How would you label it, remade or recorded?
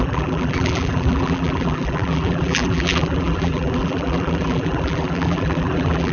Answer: remade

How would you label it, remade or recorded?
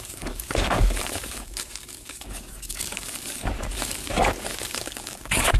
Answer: remade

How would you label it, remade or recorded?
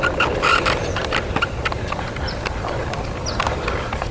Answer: remade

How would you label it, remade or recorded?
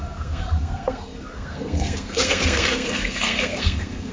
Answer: remade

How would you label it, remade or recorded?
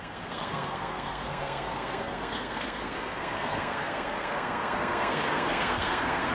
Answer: remade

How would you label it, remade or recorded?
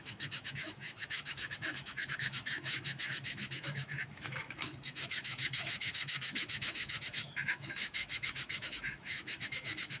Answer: remade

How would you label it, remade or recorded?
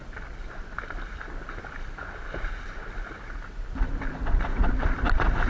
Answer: remade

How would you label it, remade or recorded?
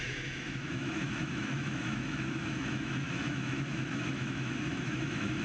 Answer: remade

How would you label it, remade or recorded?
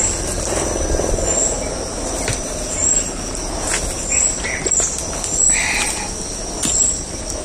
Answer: recorded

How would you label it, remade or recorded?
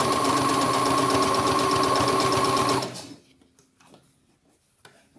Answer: recorded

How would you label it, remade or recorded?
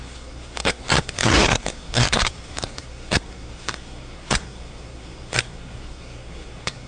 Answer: remade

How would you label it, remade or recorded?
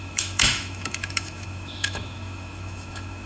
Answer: remade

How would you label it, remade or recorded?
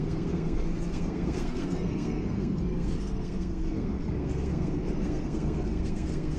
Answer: remade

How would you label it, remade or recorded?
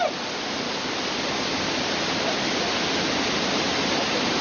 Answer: recorded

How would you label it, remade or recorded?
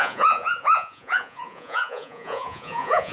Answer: remade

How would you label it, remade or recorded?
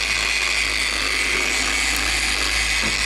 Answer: recorded